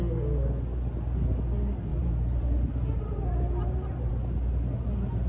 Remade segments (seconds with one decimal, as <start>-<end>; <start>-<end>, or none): 1.9-4.1